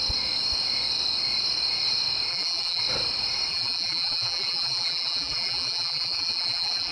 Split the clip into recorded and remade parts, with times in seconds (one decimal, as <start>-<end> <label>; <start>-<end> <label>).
0.0-2.3 recorded; 2.3-2.8 remade; 2.8-3.5 recorded; 3.5-6.9 remade